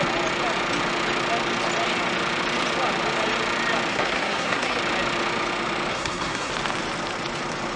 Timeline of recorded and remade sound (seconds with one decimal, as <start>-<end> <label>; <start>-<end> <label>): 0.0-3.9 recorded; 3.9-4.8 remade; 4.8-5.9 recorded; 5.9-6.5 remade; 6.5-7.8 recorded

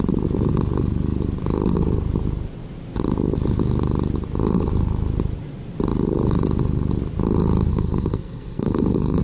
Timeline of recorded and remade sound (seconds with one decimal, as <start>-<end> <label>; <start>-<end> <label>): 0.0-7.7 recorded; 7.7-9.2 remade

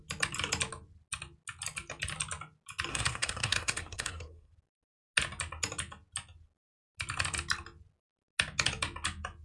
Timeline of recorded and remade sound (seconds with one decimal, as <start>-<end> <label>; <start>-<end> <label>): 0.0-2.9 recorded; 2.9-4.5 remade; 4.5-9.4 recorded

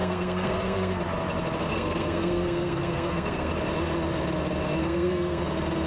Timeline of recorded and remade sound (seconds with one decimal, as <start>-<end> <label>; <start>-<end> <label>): 0.0-1.0 remade; 1.0-1.7 recorded; 1.7-3.5 remade; 3.5-4.8 recorded; 4.8-5.4 remade; 5.4-5.9 recorded

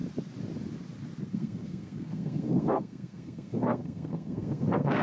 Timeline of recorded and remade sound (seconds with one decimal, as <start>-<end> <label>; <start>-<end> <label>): 0.0-1.3 recorded; 1.3-5.0 remade